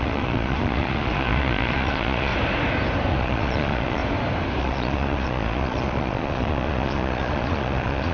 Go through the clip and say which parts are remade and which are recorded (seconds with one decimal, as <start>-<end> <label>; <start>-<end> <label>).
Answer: 0.0-2.3 remade; 2.3-3.1 recorded; 3.1-4.0 remade; 4.0-4.6 recorded; 4.6-8.1 remade